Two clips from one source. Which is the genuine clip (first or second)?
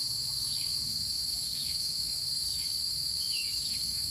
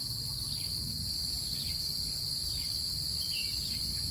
second